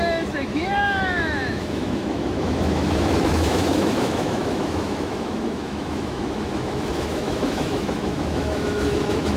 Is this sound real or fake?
fake